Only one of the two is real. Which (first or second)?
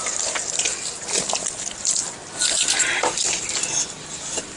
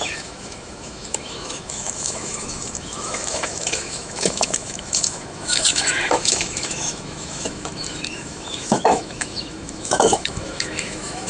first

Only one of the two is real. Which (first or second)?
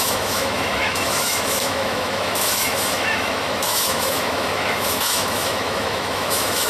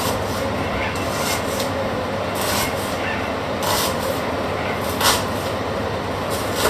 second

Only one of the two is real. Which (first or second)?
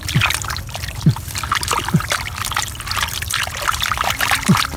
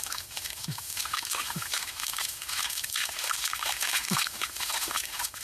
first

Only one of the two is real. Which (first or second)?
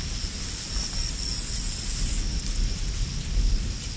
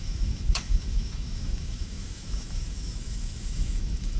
first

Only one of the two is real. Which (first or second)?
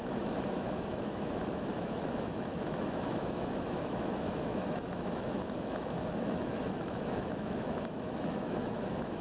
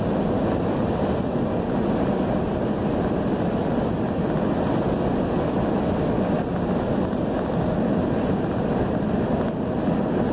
second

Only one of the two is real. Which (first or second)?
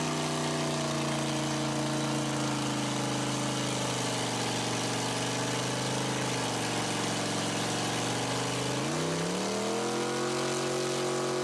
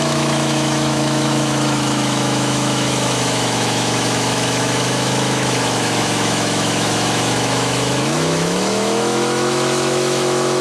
first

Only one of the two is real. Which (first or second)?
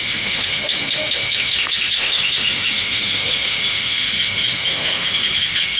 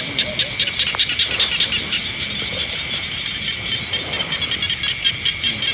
second